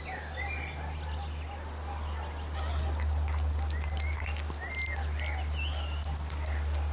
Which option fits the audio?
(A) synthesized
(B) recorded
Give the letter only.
B